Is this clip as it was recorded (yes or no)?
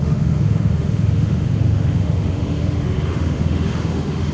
no